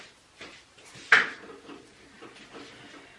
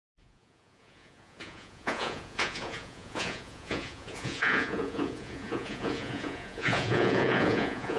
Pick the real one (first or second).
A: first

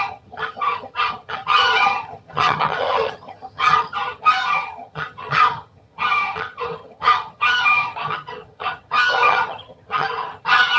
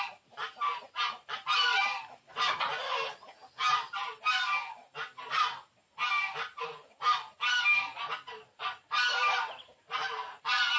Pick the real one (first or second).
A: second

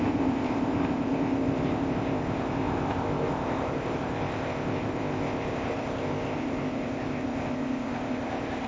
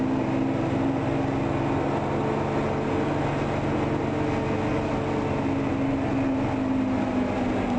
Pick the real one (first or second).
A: second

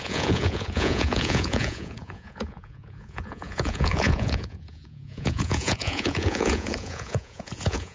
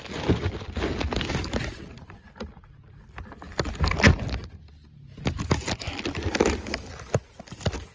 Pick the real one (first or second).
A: second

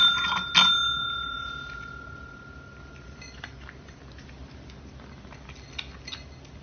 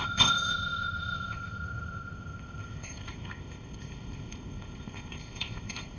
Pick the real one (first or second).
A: first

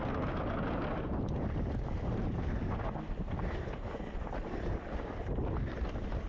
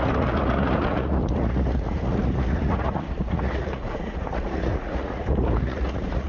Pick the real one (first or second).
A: first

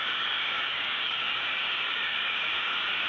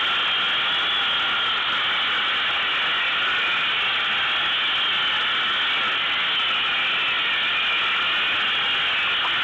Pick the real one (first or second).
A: second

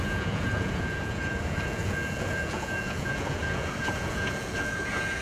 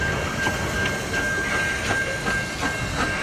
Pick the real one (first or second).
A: second